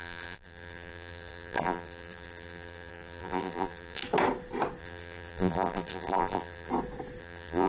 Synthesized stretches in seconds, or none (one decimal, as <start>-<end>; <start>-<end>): 0.0-4.0; 4.8-6.7; 7.2-7.7